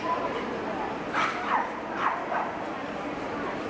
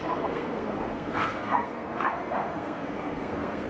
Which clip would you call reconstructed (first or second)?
second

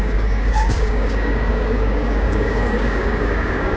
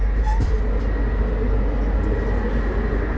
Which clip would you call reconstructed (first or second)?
first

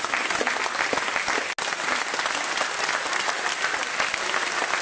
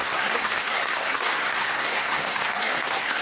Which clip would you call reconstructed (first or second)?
second